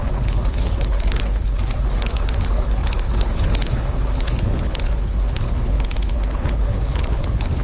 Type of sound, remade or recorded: remade